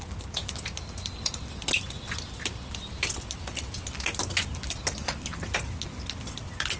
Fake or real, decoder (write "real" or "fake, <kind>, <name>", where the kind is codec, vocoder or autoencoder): real